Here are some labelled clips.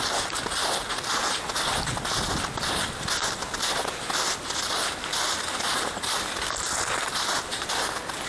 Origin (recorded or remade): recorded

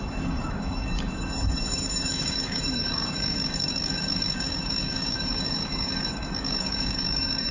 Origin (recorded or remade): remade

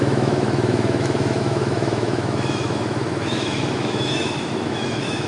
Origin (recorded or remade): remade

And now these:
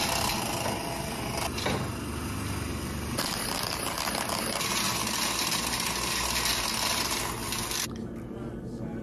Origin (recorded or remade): recorded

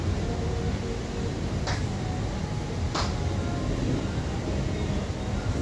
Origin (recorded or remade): recorded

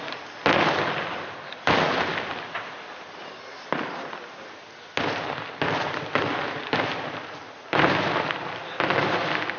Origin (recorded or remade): recorded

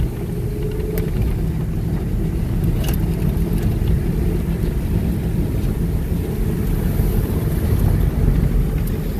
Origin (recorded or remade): recorded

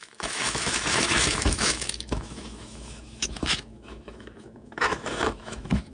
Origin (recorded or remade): remade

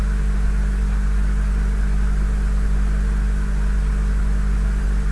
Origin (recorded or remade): recorded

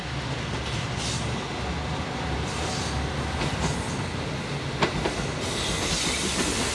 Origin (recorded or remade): recorded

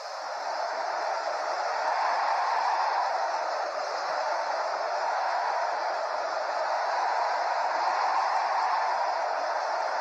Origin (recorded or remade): recorded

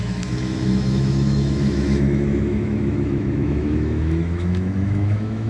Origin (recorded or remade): remade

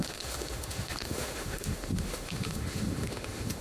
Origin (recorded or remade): remade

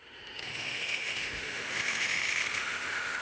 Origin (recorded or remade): remade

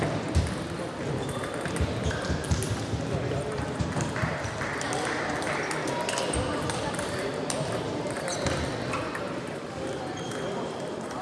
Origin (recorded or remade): recorded